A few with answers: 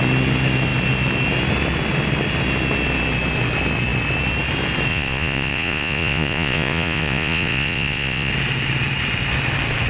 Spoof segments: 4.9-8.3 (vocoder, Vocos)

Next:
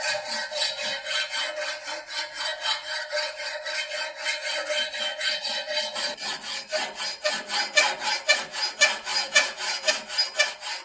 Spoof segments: 9.1-9.9 (vocoder, Vocos)

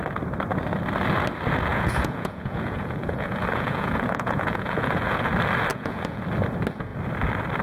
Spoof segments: 1.7-5.3 (vocoder, Vocos); 5.7-6.2

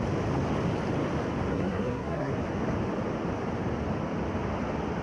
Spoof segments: 1.5-2.3 (codec, SNAC)

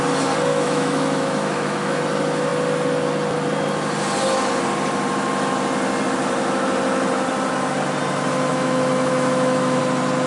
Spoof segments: 0.5-2.0 (autoencoder, DAC-VAE); 8.5-9.8

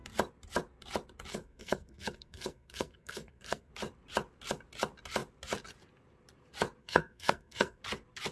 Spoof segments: 1.3-3.7 (codec, SNAC); 6.8-7.8